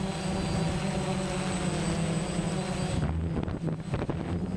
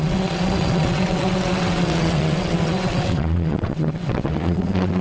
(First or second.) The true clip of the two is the first